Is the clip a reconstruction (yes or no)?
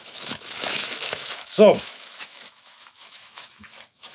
yes